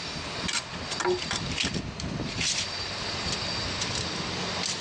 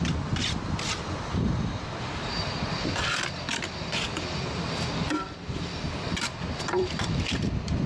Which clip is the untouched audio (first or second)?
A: first